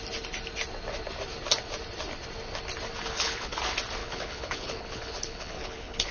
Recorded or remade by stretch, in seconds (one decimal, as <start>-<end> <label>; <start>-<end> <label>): 0.0-3.1 recorded; 3.1-3.6 remade; 3.6-4.0 recorded; 4.0-6.1 remade